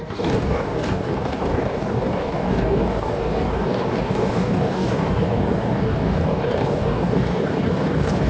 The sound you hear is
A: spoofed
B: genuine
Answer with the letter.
A